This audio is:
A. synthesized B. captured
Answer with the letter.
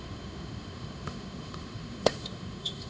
A